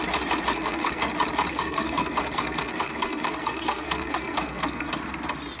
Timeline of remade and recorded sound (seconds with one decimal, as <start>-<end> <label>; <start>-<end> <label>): 0.0-0.5 recorded; 0.5-1.1 remade; 1.1-1.5 recorded; 1.5-4.9 remade; 4.9-5.6 recorded